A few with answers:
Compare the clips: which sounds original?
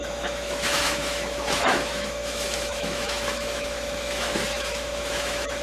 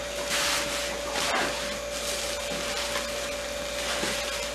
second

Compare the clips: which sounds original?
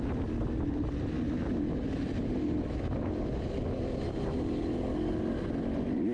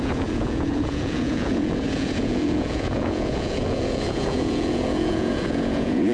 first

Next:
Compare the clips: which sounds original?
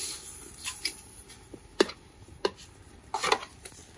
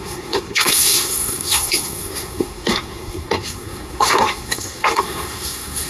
first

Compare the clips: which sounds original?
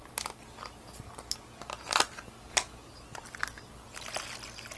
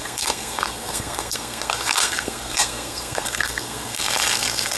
first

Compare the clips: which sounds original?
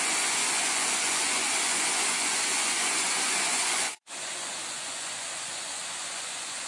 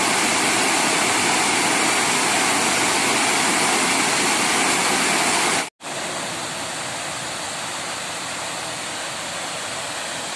second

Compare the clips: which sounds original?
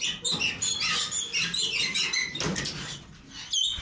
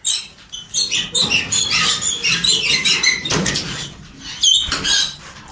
first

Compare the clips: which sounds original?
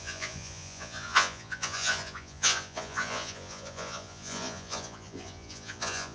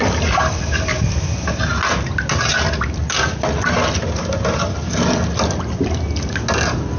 second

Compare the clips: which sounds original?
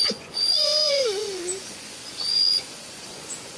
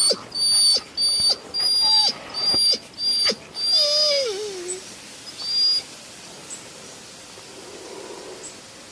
second